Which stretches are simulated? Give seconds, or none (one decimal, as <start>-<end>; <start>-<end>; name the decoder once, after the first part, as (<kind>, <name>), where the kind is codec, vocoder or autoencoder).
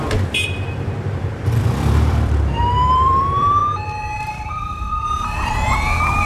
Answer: 0.0-3.6 (vocoder, BigVGAN v2); 4.3-6.3